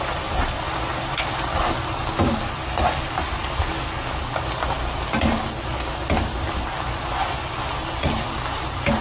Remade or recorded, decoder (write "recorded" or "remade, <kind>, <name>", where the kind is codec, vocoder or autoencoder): recorded